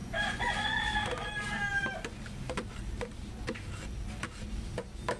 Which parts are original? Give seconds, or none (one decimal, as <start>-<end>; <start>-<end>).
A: 0.8-5.2